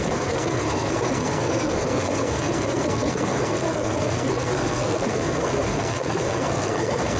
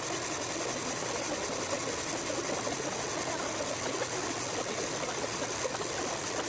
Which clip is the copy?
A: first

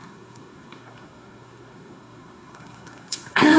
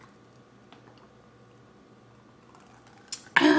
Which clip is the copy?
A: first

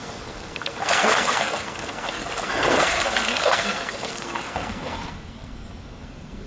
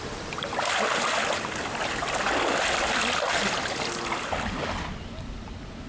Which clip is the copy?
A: first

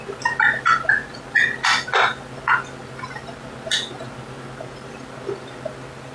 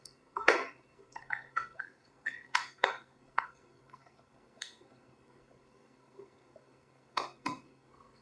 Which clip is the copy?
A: second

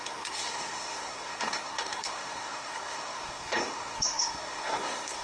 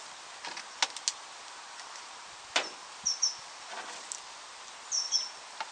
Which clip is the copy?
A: first